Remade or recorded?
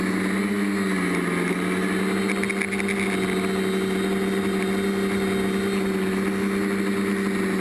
recorded